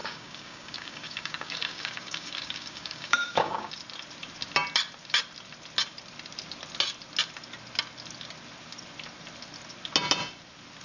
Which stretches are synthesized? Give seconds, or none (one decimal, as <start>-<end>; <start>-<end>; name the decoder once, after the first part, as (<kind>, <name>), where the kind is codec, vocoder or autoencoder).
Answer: 0.0-3.7 (codec, DAC)